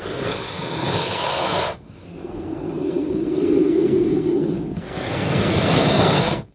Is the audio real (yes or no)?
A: no